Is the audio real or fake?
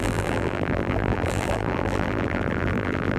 fake